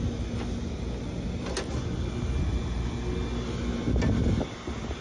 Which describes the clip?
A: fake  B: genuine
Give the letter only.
B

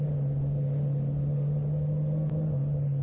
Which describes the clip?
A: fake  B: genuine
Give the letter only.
B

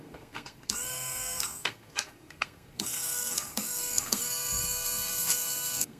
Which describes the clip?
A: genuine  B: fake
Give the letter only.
B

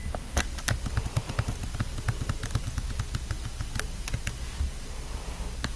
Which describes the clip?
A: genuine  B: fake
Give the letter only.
A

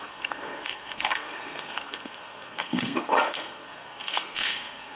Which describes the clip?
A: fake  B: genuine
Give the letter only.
A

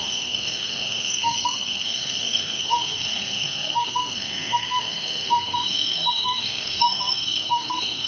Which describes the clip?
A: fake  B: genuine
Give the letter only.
A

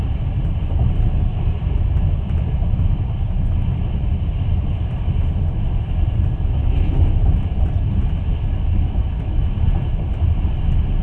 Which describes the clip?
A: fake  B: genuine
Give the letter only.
B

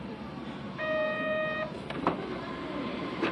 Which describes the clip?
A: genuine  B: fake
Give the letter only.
B